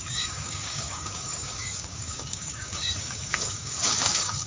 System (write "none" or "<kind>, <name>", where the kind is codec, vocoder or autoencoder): codec, DAC